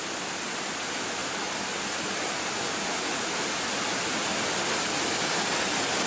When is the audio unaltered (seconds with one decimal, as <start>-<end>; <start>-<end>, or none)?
0.0-6.1